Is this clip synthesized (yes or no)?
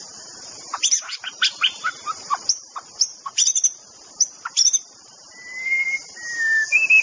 no